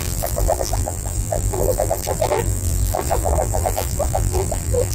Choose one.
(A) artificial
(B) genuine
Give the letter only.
A